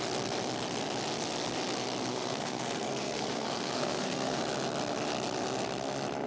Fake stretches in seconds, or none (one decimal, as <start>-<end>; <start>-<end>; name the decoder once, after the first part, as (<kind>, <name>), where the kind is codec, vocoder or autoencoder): 2.1-4.4 (codec, SNAC)